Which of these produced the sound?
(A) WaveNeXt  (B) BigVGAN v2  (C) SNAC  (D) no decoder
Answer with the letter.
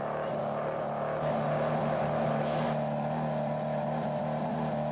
D